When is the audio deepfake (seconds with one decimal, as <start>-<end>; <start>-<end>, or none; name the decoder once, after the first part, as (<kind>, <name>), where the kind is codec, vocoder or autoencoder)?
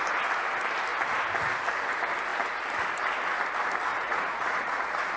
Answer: 3.9-4.8 (vocoder, Vocos)